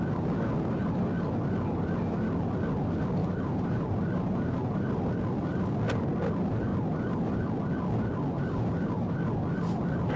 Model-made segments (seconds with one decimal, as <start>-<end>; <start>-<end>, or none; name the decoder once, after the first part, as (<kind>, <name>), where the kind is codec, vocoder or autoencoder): 3.2-5.0 (vocoder, BigVGAN v2); 6.7-7.5